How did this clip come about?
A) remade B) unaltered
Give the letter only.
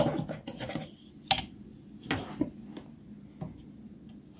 B